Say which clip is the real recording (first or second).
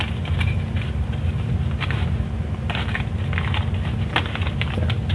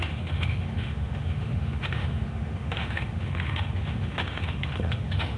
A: first